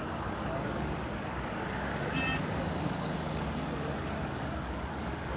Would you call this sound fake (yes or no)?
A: yes